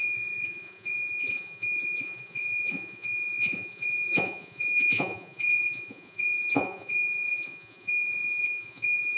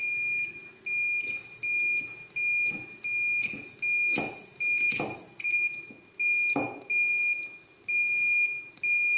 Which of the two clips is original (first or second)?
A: second